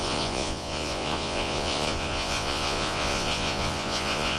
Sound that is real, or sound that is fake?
fake